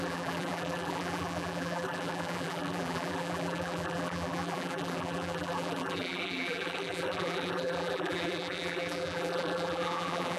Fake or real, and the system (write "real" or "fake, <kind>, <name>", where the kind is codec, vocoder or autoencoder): fake, vocoder, BigVGAN v2